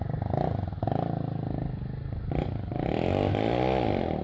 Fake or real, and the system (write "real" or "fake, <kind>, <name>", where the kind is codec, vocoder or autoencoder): real